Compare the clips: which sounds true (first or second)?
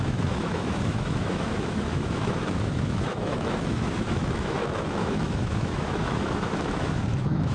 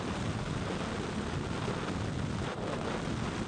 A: second